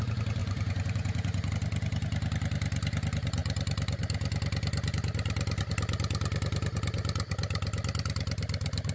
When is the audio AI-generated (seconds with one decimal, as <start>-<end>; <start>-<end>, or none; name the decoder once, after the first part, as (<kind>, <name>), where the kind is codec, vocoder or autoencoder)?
0.4-1.5 (vocoder, Vocos)

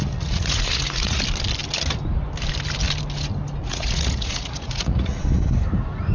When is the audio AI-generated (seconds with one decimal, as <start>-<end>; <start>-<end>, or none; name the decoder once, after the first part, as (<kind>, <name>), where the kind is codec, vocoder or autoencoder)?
0.0-1.2 (vocoder, Vocos); 3.6-5.2

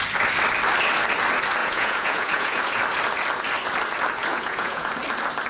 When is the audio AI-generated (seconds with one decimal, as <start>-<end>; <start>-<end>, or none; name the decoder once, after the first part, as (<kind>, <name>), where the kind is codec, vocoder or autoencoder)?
1.6-2.6 (vocoder, Vocos); 4.3-4.9

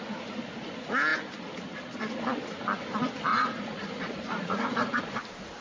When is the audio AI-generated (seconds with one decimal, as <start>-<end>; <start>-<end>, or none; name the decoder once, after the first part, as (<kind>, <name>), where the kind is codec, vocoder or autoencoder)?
3.3-5.0 (vocoder, Vocos)

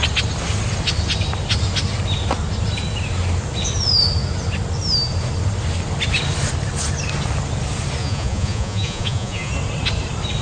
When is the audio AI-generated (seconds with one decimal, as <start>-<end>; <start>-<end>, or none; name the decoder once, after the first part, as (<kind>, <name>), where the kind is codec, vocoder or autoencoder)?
8.0-9.5 (vocoder, Vocos)

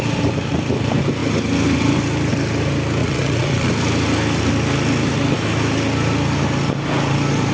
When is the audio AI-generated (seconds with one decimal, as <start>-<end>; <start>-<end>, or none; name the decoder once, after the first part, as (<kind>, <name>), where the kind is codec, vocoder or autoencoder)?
3.0-3.7 (vocoder, Vocos)

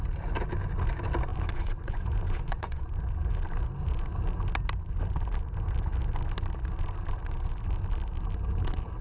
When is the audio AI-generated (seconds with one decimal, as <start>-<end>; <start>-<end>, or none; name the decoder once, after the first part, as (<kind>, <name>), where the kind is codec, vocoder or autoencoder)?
1.3-2.9 (vocoder, Vocos)